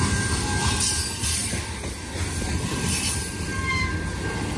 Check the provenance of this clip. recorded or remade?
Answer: recorded